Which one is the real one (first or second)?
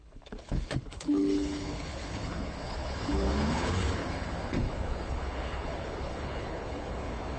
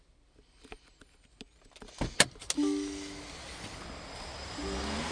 second